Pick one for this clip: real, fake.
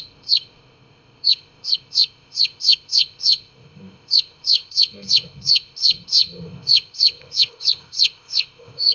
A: fake